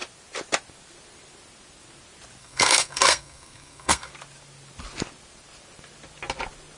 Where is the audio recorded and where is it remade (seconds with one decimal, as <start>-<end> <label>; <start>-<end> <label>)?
0.0-2.4 recorded; 2.4-4.1 remade; 4.1-6.8 recorded